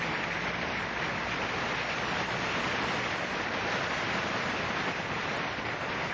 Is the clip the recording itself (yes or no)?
yes